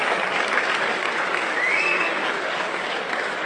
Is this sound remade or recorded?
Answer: remade